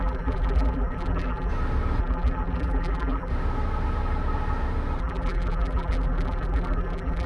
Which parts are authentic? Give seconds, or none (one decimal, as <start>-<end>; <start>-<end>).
1.5-2.0; 3.3-5.0